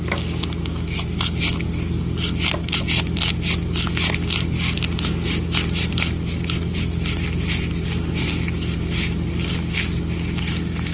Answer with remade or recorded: recorded